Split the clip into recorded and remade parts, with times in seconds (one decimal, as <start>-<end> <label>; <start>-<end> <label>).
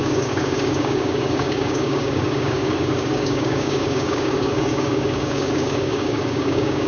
0.0-6.9 remade